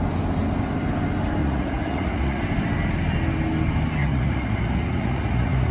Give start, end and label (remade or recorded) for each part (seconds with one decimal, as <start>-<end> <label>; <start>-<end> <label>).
0.0-1.4 recorded; 1.4-2.4 remade; 2.4-4.0 recorded; 4.0-5.7 remade